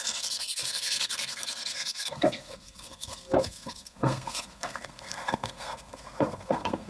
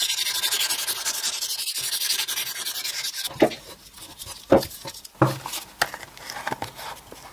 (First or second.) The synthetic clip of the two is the first